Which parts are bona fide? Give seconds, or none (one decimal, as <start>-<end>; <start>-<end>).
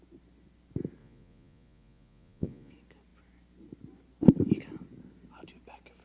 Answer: 0.0-1.0; 2.7-6.0